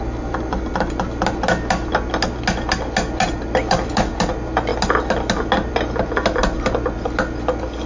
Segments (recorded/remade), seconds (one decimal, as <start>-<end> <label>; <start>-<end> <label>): 0.0-7.9 recorded